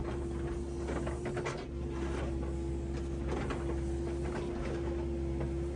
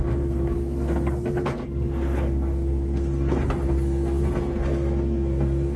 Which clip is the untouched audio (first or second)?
first